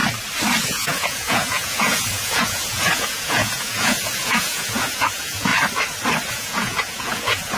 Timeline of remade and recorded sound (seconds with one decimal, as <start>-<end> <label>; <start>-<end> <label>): 0.0-0.6 recorded; 0.6-5.5 remade; 5.5-6.3 recorded; 6.3-7.6 remade